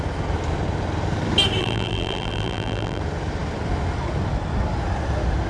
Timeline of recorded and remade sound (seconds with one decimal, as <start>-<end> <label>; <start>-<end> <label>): 0.0-1.6 recorded; 1.6-3.0 remade; 3.0-5.5 recorded